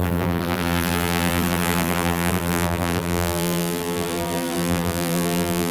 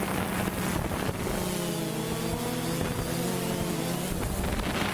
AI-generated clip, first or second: first